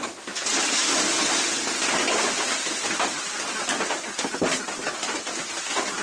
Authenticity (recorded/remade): recorded